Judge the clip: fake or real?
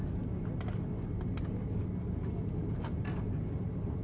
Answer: real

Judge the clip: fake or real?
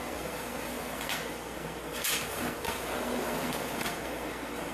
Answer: fake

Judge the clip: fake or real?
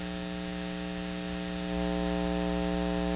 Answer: real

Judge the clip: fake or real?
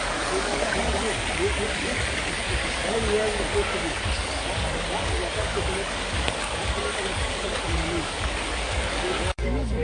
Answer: fake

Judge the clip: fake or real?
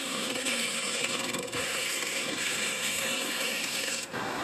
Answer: fake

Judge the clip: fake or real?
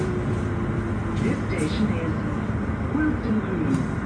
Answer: real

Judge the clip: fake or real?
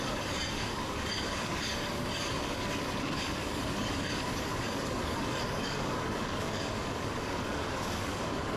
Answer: fake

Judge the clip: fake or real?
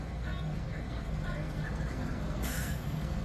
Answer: fake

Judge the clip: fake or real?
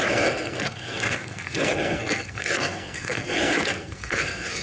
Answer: fake